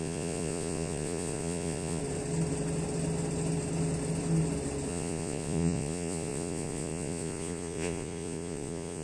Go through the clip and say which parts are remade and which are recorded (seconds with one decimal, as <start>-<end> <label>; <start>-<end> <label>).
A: 0.0-2.0 remade; 2.0-4.9 recorded; 4.9-9.0 remade